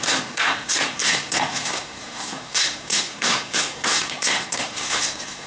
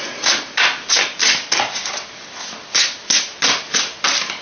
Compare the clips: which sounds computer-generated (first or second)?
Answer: first